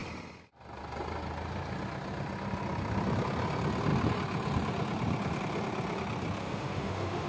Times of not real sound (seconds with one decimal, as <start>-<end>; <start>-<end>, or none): 6.4-7.3